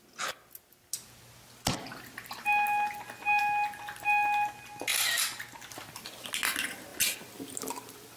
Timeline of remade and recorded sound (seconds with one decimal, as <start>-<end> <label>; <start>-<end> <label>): 0.0-8.2 recorded